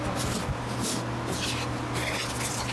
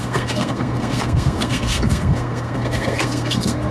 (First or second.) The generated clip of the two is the second